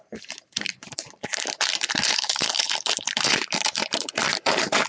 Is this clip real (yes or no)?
no